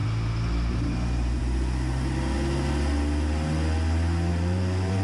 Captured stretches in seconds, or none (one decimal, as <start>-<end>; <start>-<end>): 0.0-0.7; 1.4-4.3